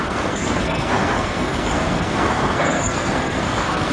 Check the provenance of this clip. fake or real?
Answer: fake